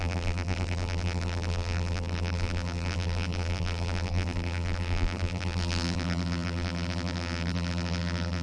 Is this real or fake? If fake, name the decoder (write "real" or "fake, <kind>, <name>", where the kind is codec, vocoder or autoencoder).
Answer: fake, vocoder, BigVGAN v2